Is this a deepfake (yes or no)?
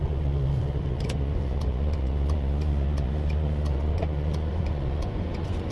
yes